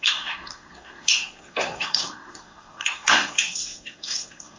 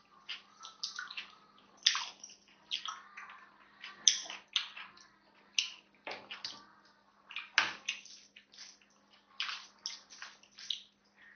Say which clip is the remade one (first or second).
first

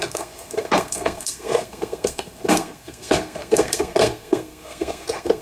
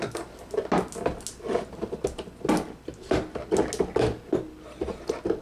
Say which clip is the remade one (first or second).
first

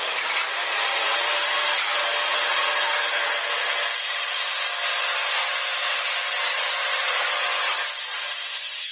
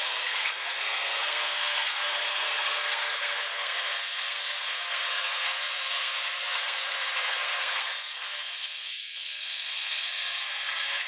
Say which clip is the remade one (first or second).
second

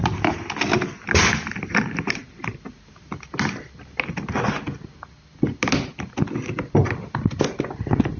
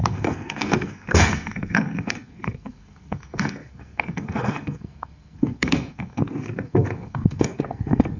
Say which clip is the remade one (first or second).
second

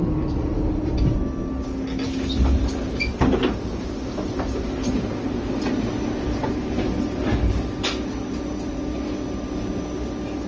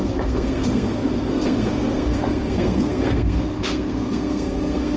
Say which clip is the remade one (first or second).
second